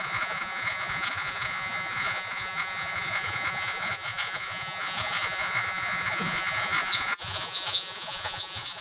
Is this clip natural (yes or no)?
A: no